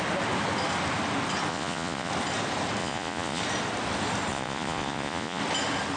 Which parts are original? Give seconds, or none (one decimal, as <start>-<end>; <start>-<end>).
0.0-1.5; 2.1-2.8; 3.4-4.3; 5.4-6.0